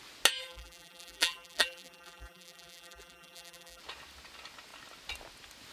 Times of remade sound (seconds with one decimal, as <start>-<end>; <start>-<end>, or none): 0.4-3.8